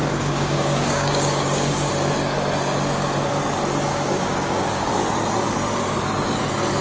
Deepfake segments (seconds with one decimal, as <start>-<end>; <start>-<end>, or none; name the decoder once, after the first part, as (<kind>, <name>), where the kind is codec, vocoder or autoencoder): 0.0-1.9 (codec, DAC); 3.9-4.9